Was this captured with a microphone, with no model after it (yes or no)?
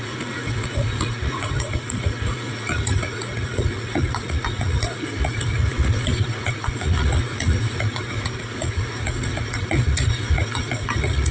no